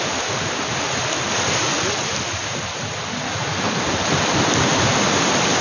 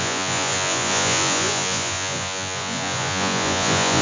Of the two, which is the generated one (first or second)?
second